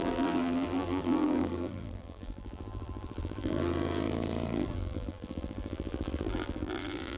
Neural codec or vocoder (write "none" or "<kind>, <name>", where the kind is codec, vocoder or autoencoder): vocoder, BigVGAN v2